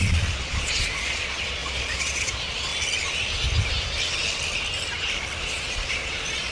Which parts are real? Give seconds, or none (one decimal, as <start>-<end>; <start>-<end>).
2.7-5.4